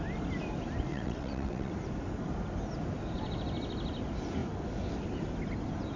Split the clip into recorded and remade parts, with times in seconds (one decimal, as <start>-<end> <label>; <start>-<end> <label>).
0.0-0.9 recorded; 0.9-1.7 remade; 1.7-6.0 recorded